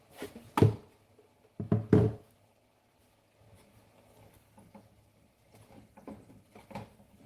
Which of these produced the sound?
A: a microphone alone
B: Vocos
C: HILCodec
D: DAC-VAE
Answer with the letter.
A